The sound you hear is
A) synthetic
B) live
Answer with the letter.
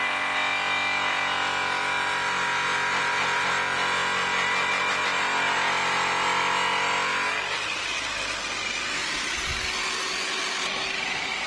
B